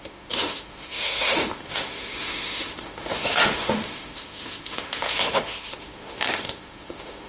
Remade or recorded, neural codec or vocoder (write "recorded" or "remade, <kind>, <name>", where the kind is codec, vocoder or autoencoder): remade, autoencoder, DAC-VAE